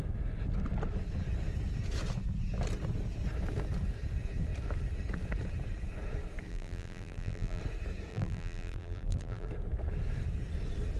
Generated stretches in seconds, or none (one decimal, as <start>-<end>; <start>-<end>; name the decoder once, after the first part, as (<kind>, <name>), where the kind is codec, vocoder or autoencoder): 6.5-7.6 (vocoder, BigVGAN v2); 8.1-9.5